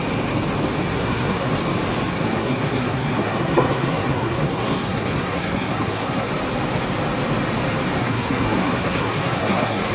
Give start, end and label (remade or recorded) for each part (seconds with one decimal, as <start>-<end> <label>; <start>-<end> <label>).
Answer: 0.0-0.9 recorded; 0.9-1.5 remade; 1.5-2.1 recorded; 2.1-6.3 remade; 6.3-8.0 recorded; 8.0-9.9 remade